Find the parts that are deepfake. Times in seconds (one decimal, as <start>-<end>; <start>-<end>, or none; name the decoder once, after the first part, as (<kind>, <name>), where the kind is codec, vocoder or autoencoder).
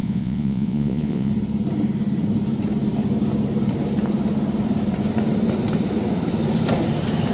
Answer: 0.0-1.3 (vocoder, Vocos)